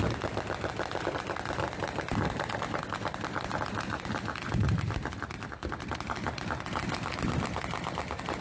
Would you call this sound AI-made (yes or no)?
no